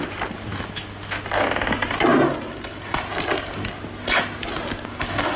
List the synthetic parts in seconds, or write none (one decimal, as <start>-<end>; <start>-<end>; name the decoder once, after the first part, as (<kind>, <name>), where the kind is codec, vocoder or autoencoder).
0.5-1.0 (autoencoder, DAC-VAE)